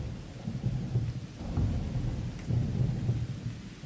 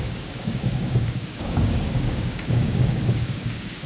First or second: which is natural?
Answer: first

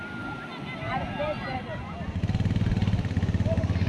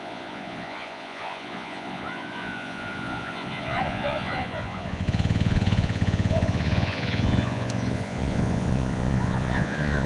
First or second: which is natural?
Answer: first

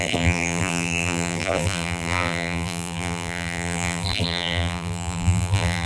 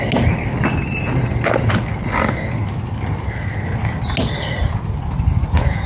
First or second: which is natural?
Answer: second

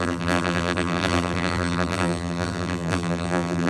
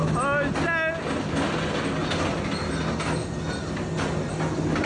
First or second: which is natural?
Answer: second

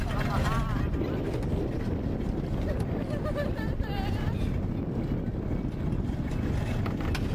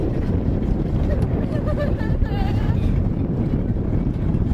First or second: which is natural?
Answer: first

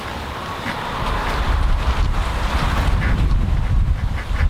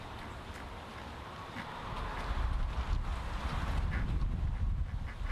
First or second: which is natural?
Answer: second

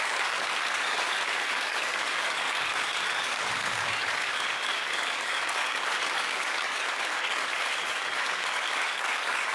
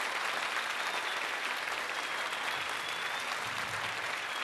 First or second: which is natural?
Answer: second